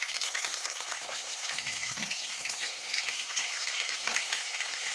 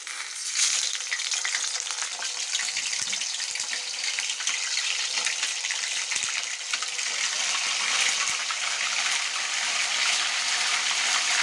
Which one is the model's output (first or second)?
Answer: first